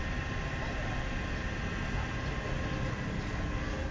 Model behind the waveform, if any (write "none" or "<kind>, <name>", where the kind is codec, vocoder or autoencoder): none